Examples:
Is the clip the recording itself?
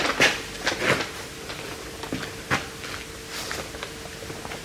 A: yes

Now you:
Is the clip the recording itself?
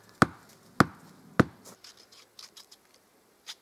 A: yes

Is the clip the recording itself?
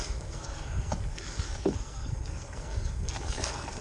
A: no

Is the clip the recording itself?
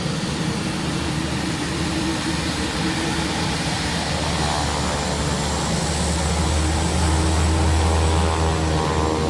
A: yes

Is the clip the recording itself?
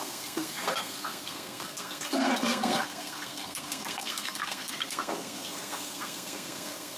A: no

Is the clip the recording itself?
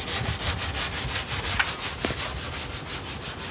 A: yes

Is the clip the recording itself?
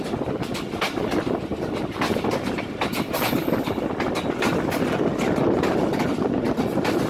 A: yes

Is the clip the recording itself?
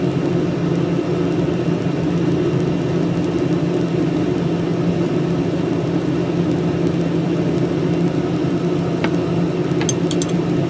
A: yes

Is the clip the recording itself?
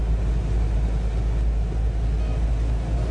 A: yes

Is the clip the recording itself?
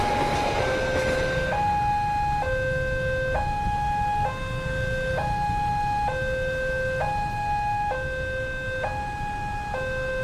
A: yes